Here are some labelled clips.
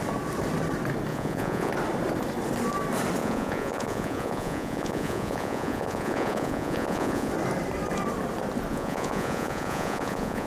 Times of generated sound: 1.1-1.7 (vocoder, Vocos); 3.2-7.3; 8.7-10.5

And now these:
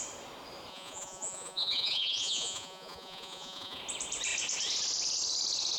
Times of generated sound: 0.7-3.8 (vocoder, Vocos)

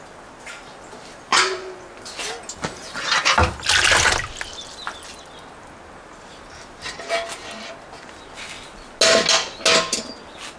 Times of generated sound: 1.3-1.9 (vocoder, Vocos)

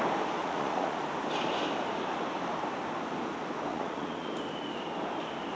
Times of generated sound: 0.4-1.0 (vocoder, Vocos); 3.7-4.3

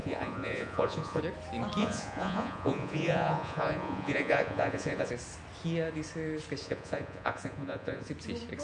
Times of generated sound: 0.0-1.2 (vocoder, Vocos); 1.8-5.1; 6.6-8.1

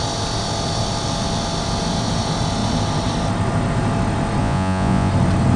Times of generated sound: 4.4-5.1 (vocoder, Vocos)